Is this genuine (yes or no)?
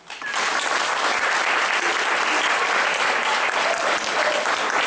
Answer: yes